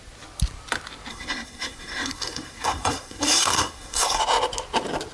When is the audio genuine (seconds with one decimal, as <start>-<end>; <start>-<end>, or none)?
0.0-1.1; 4.2-5.1